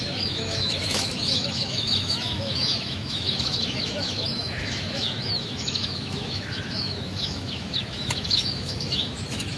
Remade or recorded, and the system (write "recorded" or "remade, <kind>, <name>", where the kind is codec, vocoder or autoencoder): remade, autoencoder, DAC-VAE